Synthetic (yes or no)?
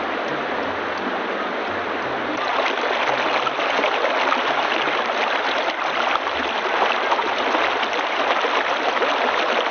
no